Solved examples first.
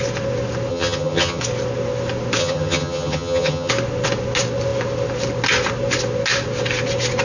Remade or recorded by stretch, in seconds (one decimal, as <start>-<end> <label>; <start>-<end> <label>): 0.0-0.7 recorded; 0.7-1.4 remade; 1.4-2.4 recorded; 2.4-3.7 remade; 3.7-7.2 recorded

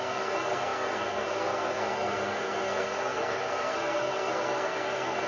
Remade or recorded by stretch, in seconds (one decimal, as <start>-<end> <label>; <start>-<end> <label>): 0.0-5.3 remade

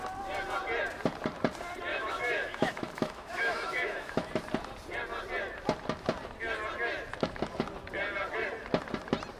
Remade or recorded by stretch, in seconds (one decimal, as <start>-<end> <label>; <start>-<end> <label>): 0.0-1.9 recorded; 1.9-4.3 remade; 4.3-9.4 recorded